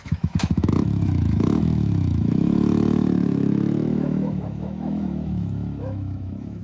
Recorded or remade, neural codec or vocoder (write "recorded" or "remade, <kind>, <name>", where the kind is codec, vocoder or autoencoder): remade, autoencoder, DAC-VAE